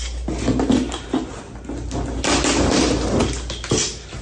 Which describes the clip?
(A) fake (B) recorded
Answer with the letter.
B